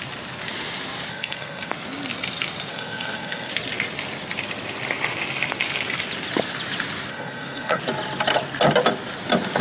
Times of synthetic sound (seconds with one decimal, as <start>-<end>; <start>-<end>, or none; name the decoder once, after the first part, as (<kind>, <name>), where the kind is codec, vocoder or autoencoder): 1.1-1.7 (codec, SNAC); 2.7-3.5; 7.1-7.8